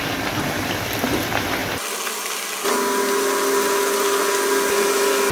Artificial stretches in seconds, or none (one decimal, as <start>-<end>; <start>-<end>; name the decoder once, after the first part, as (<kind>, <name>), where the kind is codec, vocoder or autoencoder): 0.0-1.6 (vocoder, BigVGAN v2); 4.8-5.3